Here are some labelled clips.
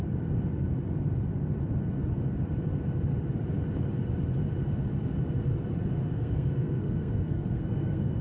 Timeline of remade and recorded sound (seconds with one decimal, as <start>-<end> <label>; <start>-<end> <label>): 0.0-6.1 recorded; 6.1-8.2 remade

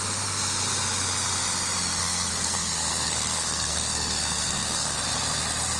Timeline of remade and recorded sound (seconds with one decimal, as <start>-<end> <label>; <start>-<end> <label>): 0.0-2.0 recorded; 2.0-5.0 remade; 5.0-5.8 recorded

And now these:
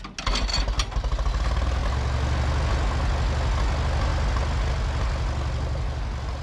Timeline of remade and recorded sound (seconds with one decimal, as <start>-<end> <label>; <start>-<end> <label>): 0.0-6.4 recorded

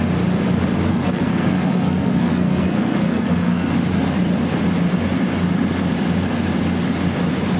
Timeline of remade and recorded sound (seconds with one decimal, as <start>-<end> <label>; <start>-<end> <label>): 0.0-0.9 recorded; 0.9-3.7 remade; 3.7-7.6 recorded

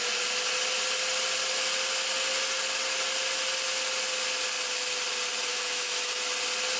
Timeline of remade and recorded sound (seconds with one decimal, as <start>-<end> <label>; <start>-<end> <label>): 0.0-5.5 recorded; 5.5-6.2 remade; 6.2-6.8 recorded

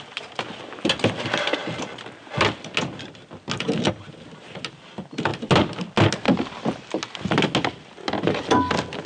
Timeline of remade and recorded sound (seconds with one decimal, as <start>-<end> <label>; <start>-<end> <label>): 0.0-9.1 recorded

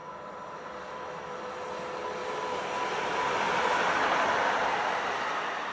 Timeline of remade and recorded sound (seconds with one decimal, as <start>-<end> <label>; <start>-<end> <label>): 0.0-1.4 remade; 1.4-5.7 recorded

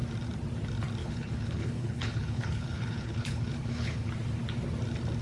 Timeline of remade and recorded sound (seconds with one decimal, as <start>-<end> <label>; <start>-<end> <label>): 0.0-1.0 recorded; 1.0-4.1 remade; 4.1-5.2 recorded